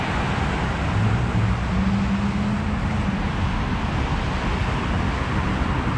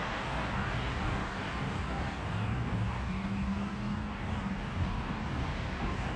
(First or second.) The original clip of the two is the first